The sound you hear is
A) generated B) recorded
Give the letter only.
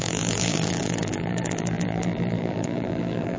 A